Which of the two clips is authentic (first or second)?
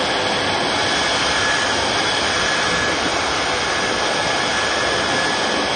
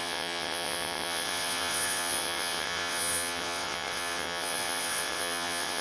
first